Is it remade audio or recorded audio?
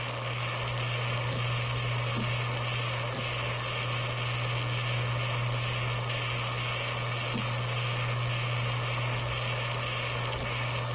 recorded